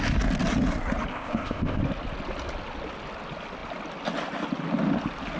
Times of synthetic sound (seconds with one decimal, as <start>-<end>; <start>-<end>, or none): 1.1-1.8